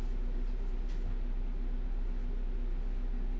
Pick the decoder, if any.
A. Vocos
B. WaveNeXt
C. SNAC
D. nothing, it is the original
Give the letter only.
D